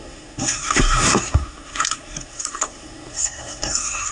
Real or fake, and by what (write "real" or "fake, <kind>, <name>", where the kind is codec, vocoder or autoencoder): fake, codec, SNAC